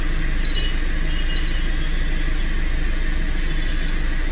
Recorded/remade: recorded